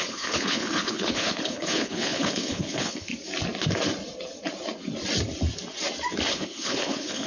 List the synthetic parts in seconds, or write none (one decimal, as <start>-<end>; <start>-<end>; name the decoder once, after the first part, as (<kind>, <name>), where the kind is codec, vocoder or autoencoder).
0.0-3.1 (codec, HILCodec); 6.3-7.3